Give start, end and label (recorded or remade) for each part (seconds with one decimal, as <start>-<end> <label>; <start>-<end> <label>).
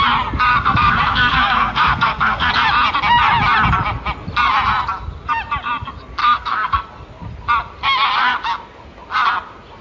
0.0-0.5 recorded; 0.5-2.5 remade; 2.5-6.2 recorded; 6.2-6.8 remade; 6.8-9.8 recorded